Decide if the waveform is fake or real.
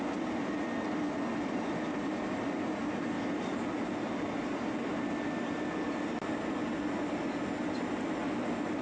real